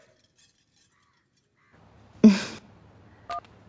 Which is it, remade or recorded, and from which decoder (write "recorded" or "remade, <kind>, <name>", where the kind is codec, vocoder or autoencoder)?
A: recorded